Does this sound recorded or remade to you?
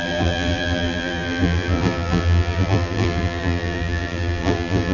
remade